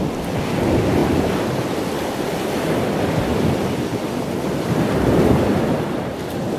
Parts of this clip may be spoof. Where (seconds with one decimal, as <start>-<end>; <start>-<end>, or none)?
none